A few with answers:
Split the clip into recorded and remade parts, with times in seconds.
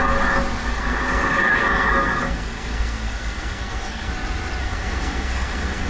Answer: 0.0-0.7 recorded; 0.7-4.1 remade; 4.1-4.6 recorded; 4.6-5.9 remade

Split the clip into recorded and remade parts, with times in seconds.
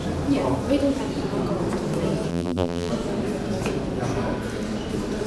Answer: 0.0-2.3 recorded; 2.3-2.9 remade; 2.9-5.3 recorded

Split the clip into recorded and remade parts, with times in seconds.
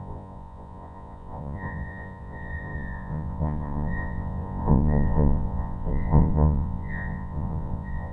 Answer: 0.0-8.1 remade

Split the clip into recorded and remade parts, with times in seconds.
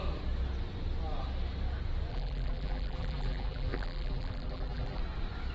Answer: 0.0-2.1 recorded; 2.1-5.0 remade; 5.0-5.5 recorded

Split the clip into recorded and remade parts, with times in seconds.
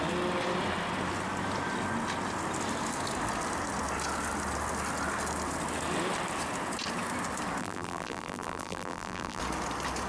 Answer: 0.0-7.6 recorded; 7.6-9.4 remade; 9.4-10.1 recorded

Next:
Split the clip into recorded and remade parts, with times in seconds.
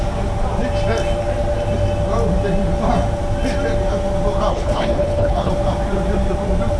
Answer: 0.0-4.5 recorded; 4.5-5.5 remade; 5.5-6.8 recorded